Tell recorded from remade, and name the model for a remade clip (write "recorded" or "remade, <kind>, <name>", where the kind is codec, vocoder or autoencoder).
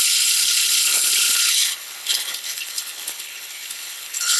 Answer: remade, codec, HILCodec